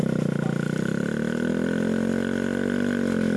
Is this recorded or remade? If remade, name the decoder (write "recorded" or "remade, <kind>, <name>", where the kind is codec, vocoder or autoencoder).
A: recorded